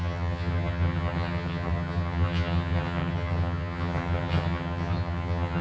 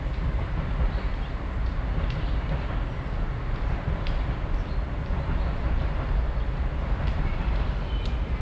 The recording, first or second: second